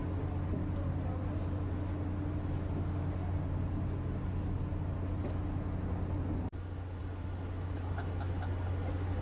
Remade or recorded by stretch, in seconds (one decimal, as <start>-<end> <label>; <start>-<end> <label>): 0.0-9.2 recorded